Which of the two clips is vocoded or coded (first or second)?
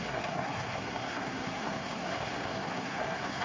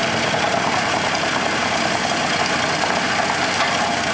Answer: first